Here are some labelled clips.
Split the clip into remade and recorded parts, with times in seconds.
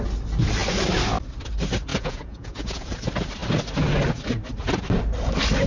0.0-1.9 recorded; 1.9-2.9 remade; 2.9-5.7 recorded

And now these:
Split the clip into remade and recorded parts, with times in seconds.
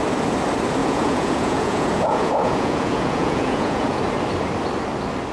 0.0-0.8 recorded; 0.8-4.0 remade; 4.0-5.3 recorded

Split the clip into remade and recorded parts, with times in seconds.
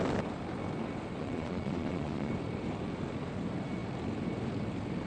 0.0-1.2 recorded; 1.2-2.3 remade; 2.3-5.1 recorded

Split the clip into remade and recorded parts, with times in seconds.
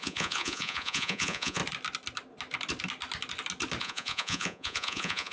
0.0-1.6 remade; 1.6-3.8 recorded; 3.8-5.3 remade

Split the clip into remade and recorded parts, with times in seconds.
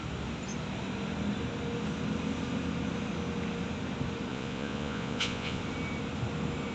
0.0-4.3 recorded; 4.3-5.6 remade; 5.6-6.7 recorded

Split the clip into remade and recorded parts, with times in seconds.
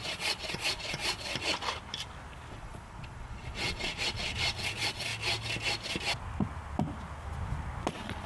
0.0-1.3 remade; 1.3-2.5 recorded; 2.5-5.1 remade; 5.1-7.9 recorded; 7.9-8.3 remade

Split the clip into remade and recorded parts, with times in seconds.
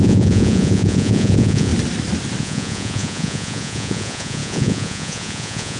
0.0-1.7 remade; 1.7-2.4 recorded; 2.4-5.8 remade